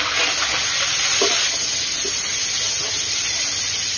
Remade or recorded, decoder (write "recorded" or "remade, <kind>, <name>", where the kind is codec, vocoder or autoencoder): recorded